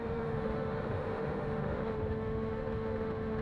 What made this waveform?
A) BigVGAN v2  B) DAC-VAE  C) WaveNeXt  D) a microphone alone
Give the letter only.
B